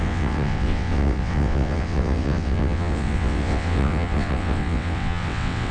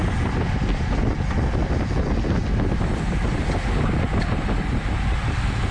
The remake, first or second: first